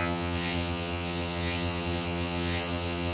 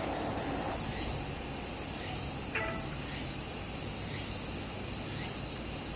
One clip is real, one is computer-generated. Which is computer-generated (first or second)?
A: first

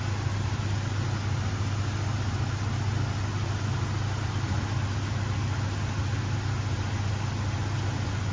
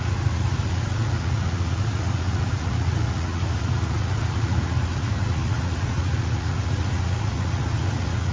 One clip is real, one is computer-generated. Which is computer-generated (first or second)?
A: second